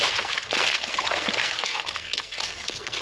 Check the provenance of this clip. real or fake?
fake